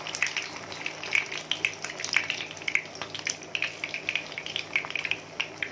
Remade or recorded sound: recorded